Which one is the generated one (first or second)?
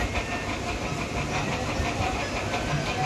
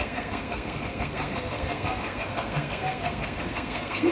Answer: second